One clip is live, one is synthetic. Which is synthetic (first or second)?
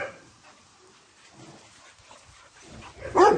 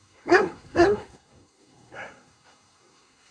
second